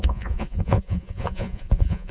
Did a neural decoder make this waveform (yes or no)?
yes